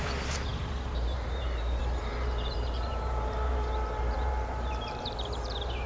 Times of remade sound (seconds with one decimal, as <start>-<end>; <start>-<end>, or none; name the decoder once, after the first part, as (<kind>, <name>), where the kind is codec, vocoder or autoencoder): 0.0-5.9 (vocoder, BigVGAN v2)